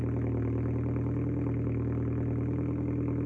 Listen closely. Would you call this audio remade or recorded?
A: recorded